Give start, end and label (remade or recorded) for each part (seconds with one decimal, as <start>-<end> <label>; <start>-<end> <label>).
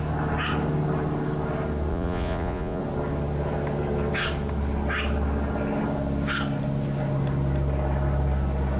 0.0-1.9 recorded; 1.9-2.8 remade; 2.8-8.8 recorded